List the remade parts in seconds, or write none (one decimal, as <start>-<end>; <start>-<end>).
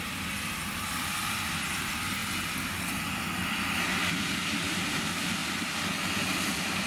none